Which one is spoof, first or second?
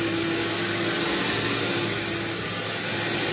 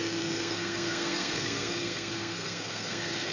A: second